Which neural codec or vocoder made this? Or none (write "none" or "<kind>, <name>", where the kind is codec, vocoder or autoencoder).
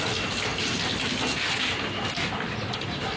none